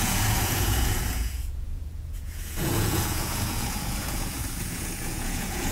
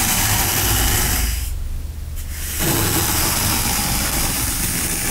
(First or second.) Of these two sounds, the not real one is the first